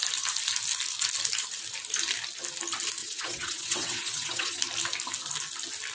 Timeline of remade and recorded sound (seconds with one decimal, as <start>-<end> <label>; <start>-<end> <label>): 0.0-3.0 recorded; 3.0-4.6 remade; 4.6-5.9 recorded